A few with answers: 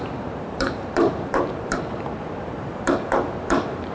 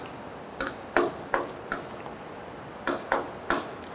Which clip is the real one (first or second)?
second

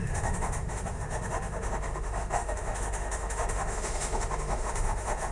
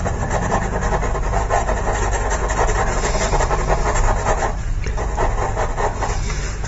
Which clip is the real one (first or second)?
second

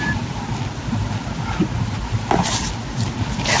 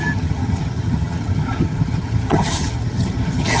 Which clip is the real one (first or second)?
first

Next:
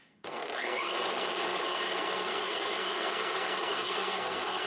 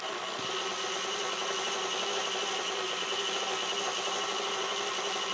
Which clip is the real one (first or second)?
second